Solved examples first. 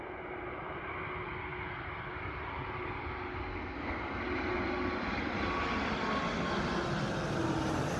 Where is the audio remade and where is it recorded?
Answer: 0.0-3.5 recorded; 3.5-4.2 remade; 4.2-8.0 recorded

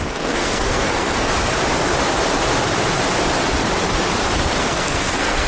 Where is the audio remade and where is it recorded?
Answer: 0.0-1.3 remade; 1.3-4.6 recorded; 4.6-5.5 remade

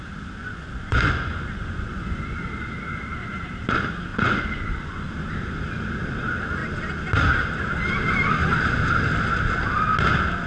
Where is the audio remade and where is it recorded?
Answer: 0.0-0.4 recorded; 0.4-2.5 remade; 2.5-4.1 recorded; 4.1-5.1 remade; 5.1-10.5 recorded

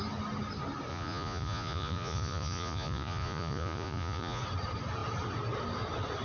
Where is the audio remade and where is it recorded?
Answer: 0.0-0.9 recorded; 0.9-4.4 remade; 4.4-6.2 recorded

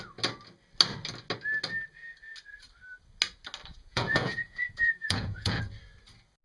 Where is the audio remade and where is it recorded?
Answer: 0.0-3.7 recorded; 3.7-5.6 remade; 5.6-6.4 recorded